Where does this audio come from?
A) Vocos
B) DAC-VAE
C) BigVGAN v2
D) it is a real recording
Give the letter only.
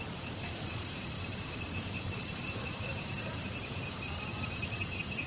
C